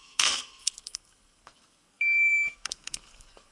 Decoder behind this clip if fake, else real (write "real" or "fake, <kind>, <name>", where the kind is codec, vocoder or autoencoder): fake, codec, SNAC